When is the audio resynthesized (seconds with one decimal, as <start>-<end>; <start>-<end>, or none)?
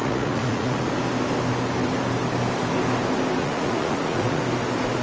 0.0-0.9; 3.4-4.4